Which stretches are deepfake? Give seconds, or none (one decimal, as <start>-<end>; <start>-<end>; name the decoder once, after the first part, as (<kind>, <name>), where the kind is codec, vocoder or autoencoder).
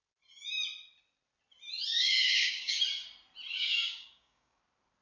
1.9-2.8 (codec, DAC); 3.5-4.6